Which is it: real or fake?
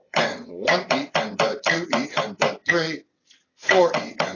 fake